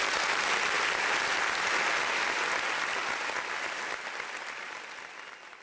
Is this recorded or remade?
recorded